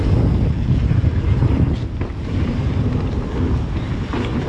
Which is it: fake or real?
real